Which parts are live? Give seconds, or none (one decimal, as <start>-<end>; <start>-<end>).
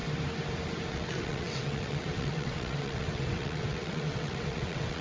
0.0-0.9